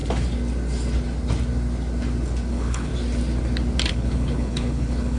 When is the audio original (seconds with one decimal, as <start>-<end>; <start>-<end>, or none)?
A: 0.0-2.5; 2.9-3.9